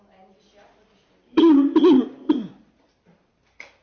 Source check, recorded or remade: recorded